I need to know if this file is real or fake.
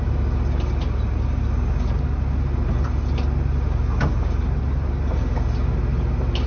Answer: real